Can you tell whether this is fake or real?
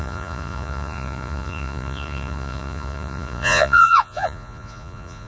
fake